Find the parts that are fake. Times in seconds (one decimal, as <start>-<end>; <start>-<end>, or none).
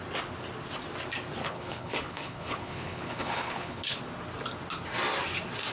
1.4-4.0